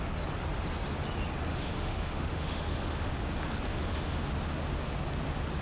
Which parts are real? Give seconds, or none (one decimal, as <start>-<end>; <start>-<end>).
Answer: 0.0-1.5; 3.1-3.7; 4.3-5.6